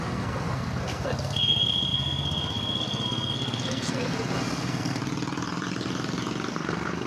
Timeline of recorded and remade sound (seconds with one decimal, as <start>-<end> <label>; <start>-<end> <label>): 0.0-5.0 remade; 5.0-6.5 recorded; 6.5-7.1 remade